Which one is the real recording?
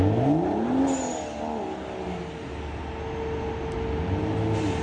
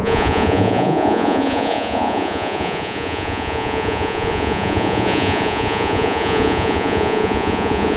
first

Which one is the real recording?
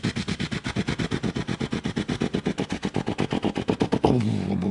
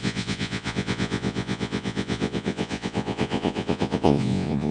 first